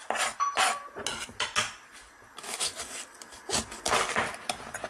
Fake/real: real